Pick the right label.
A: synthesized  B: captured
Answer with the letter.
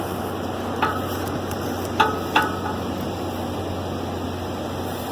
B